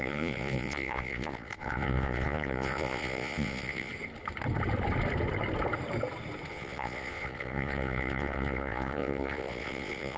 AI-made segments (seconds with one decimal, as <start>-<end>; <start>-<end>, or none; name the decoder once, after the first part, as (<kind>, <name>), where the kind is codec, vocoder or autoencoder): 0.0-3.9 (vocoder, Vocos); 6.5-10.2